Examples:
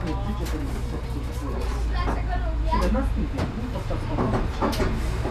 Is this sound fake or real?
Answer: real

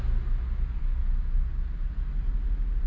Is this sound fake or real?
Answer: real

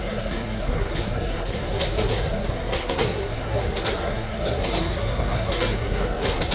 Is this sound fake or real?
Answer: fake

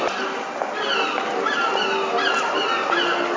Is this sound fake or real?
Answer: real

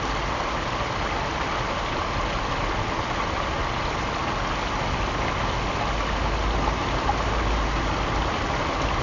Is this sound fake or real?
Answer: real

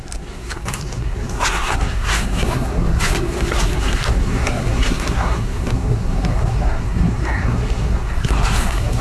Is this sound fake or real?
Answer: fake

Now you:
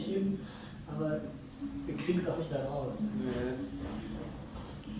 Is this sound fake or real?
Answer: real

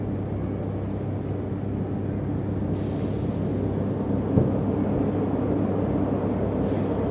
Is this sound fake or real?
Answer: real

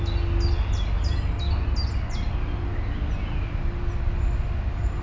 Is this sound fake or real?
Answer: real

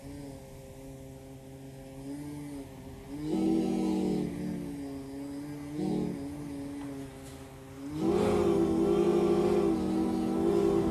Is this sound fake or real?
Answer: real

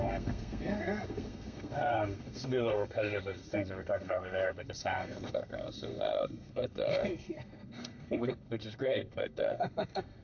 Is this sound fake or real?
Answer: fake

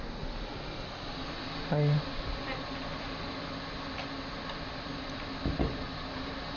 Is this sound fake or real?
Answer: real